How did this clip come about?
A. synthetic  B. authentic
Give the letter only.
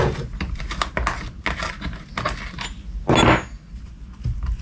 B